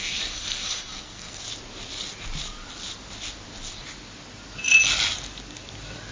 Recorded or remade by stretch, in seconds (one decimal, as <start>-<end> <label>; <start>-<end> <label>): 0.0-1.4 remade; 1.4-6.1 recorded